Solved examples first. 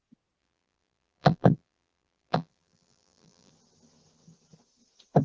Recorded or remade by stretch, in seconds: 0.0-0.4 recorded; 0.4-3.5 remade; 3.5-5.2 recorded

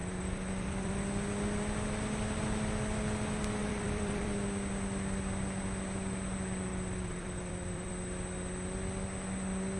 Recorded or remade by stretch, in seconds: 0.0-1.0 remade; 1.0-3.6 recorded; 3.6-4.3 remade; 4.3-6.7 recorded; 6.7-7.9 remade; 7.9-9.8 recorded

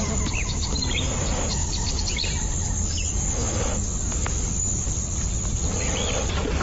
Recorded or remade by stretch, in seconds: 0.0-6.6 recorded

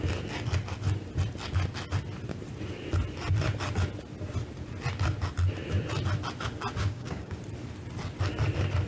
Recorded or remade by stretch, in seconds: 0.0-6.8 recorded; 6.8-7.4 remade; 7.4-8.9 recorded

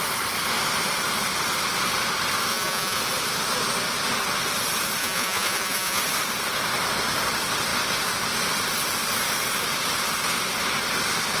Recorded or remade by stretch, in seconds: 0.0-2.5 recorded; 2.5-3.0 remade; 3.0-5.0 recorded; 5.0-6.0 remade; 6.0-11.4 recorded

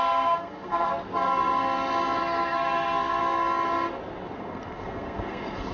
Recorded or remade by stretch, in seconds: 0.0-0.9 remade; 0.9-2.2 recorded; 2.2-3.2 remade; 3.2-4.4 recorded; 4.4-5.7 remade